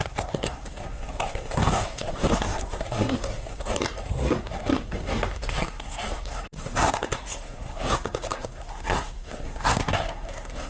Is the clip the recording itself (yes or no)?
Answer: no